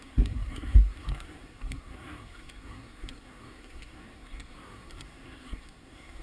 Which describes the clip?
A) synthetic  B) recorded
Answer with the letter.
A